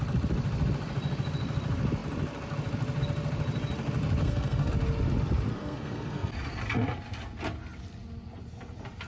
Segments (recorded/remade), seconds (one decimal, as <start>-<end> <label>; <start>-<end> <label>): 0.0-4.2 recorded; 4.2-4.7 remade; 4.7-5.5 recorded; 5.5-6.3 remade; 6.3-9.1 recorded